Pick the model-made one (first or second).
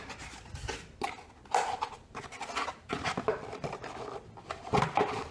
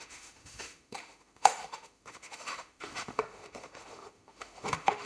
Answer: second